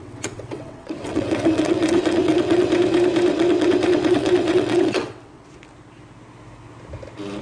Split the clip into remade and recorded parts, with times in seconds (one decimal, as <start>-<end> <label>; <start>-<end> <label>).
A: 0.0-2.7 remade; 2.7-3.3 recorded; 3.3-5.5 remade; 5.5-7.4 recorded